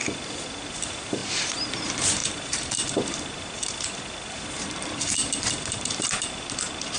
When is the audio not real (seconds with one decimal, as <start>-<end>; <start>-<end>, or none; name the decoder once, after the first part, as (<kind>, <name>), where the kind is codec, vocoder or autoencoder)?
0.7-7.0 (vocoder, BigVGAN v2)